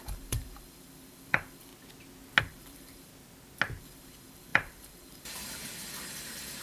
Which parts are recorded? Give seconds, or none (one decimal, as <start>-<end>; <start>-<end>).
1.7-2.4; 3.1-3.8